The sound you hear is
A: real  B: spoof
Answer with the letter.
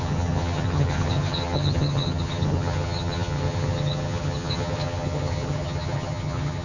B